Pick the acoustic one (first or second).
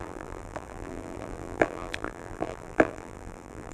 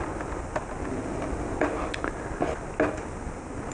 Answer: second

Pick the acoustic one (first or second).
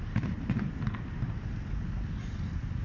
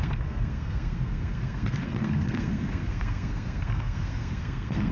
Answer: first